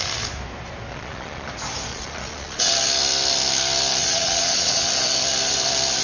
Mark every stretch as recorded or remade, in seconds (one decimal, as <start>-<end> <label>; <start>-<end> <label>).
0.0-0.9 recorded; 0.9-1.5 remade; 1.5-1.9 recorded; 1.9-2.7 remade; 2.7-4.0 recorded; 4.0-4.9 remade; 4.9-6.0 recorded